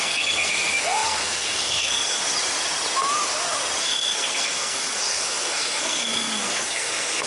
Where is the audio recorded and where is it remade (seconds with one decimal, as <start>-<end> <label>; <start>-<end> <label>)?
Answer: 0.0-2.2 remade; 2.2-3.8 recorded; 3.8-7.3 remade